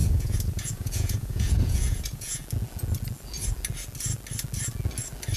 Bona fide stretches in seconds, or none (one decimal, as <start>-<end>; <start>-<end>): 2.4-5.4